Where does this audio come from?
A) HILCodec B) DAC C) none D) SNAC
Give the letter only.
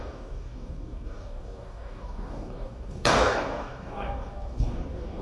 B